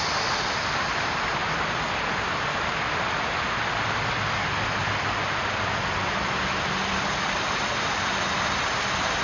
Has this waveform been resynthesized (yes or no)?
no